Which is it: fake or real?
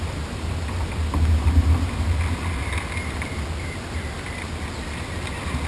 real